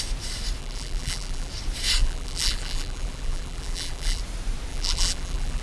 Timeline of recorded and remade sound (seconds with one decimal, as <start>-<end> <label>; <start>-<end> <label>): 0.0-0.6 recorded; 0.6-1.5 remade; 1.5-2.0 recorded; 2.0-4.2 remade; 4.2-4.7 recorded; 4.7-5.6 remade